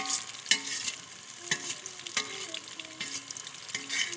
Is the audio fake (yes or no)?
no